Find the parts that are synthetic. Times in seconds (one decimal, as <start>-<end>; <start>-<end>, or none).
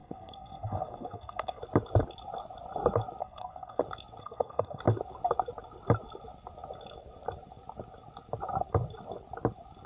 0.0-1.6; 3.2-3.8; 4.2-4.8